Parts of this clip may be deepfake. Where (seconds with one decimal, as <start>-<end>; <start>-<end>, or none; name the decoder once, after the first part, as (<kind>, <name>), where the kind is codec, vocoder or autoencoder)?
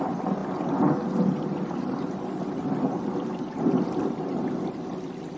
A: none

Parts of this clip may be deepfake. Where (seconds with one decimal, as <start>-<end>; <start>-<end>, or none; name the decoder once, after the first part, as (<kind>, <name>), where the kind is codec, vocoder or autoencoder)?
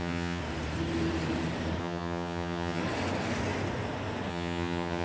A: 0.0-0.4 (vocoder, HiFi-GAN); 1.8-2.8; 4.3-5.0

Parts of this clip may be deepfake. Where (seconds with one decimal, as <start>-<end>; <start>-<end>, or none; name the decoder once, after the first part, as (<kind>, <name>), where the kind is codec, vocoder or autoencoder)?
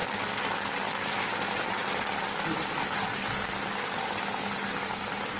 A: none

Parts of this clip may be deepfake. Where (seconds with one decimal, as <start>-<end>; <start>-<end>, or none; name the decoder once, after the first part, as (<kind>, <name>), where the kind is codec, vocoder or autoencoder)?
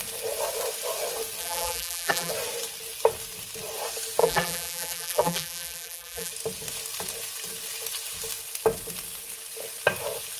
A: 1.4-2.3 (vocoder, BigVGAN v2); 4.2-6.3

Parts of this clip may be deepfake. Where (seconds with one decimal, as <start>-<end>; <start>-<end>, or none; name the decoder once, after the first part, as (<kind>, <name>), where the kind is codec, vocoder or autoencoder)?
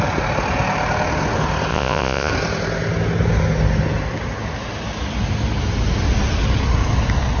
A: 1.7-2.3 (vocoder, Vocos)